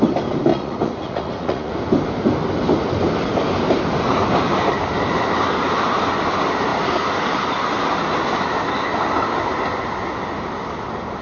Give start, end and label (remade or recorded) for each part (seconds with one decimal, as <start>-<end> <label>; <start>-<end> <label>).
0.0-0.5 recorded; 0.5-1.7 remade; 1.7-11.2 recorded